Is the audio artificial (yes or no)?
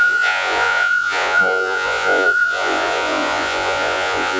yes